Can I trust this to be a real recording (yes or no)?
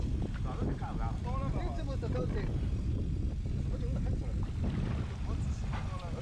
yes